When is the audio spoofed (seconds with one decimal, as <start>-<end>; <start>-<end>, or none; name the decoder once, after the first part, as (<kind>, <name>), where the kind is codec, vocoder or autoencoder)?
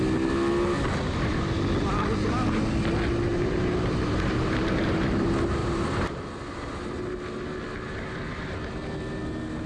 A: 3.3-5.1 (vocoder, BigVGAN v2); 5.6-6.2